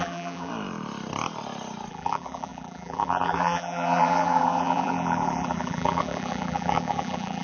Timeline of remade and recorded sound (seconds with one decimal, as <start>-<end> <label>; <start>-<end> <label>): 0.0-0.5 remade; 0.5-1.9 recorded; 1.9-7.4 remade